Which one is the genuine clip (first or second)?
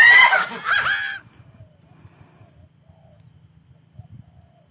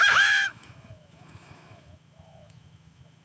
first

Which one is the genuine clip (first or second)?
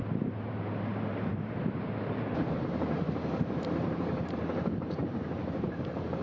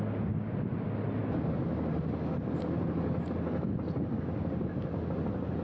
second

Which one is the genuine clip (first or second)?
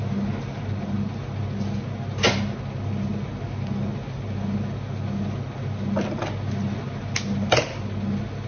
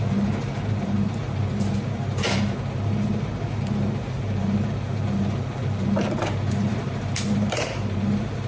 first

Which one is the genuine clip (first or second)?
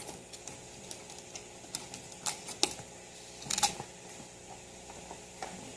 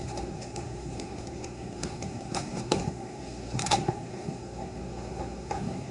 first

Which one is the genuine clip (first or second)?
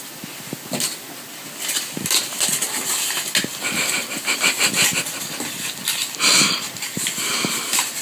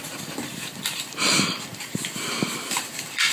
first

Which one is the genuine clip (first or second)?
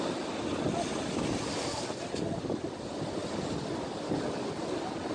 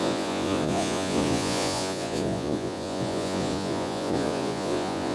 first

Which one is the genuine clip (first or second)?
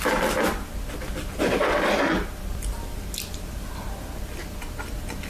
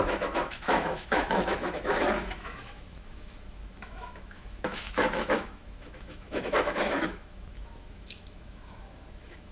first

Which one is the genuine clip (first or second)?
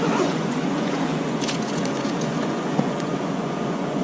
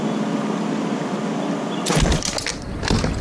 second